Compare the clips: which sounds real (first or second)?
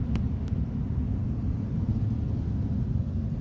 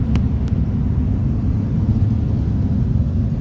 second